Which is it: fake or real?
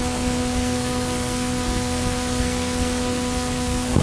fake